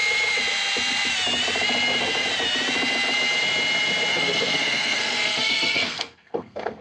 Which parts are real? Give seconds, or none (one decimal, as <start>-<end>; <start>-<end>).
0.0-4.1